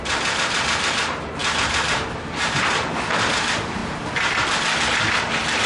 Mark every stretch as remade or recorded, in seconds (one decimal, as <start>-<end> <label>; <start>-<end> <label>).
0.0-3.8 remade; 3.8-5.2 recorded; 5.2-5.7 remade